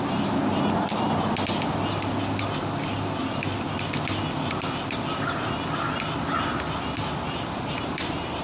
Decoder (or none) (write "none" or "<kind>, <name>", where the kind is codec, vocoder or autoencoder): none